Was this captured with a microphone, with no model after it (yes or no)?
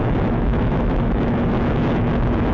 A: no